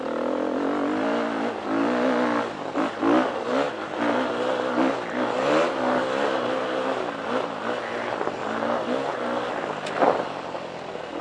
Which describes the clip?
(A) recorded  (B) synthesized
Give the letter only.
A